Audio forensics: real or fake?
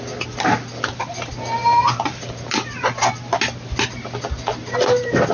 real